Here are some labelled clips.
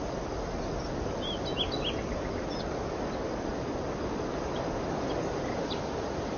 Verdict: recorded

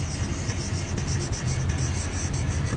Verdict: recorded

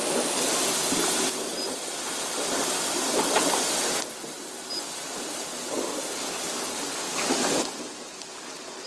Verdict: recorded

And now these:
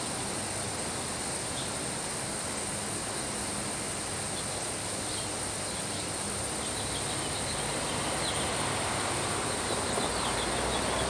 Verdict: recorded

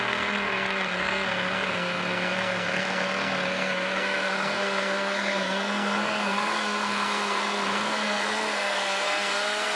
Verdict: remade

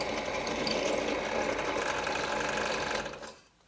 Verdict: recorded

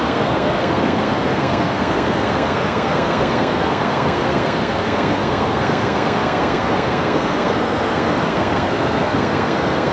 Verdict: remade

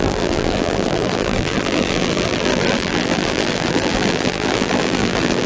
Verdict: remade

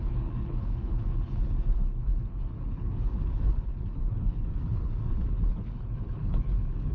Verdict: remade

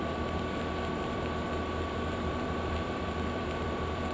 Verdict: remade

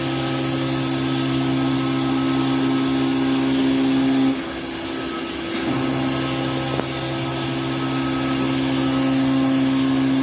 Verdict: recorded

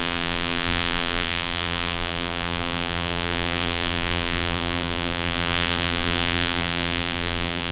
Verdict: remade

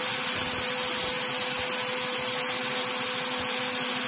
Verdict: recorded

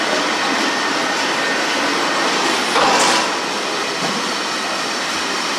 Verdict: recorded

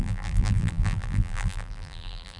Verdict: remade